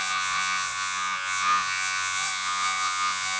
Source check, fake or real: fake